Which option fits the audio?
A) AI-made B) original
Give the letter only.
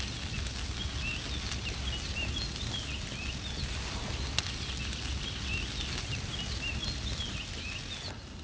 B